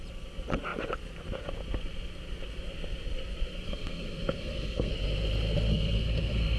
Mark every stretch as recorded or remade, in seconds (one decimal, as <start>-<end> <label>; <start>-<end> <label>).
0.0-3.5 recorded; 3.5-4.9 remade; 4.9-5.7 recorded; 5.7-6.6 remade